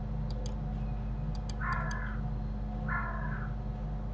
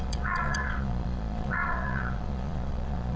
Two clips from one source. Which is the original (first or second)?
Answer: first